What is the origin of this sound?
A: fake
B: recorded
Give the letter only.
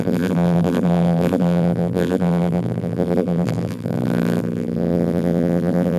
A